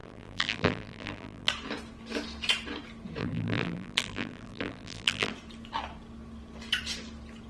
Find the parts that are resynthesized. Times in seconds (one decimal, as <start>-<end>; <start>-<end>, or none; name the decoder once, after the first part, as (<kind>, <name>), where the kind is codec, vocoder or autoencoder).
0.0-1.5 (vocoder, BigVGAN v2); 3.2-5.3